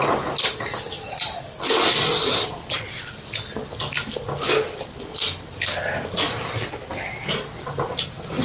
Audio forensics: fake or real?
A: real